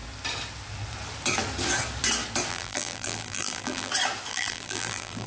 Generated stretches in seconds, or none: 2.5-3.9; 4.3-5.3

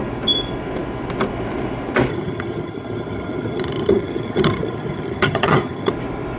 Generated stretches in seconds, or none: 2.1-5.9

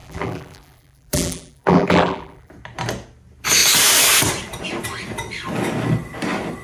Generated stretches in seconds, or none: 0.0-2.5

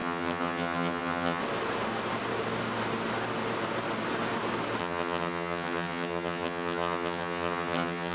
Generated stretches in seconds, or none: 0.0-1.4; 4.8-8.1

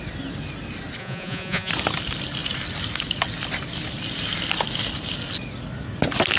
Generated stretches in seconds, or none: 1.0-1.7

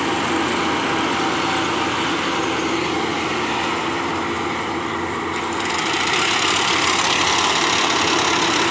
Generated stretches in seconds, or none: none

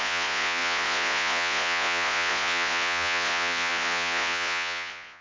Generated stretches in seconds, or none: 0.0-5.2

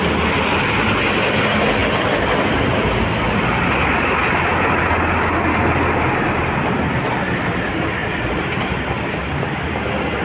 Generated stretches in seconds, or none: 1.8-2.7; 8.0-9.0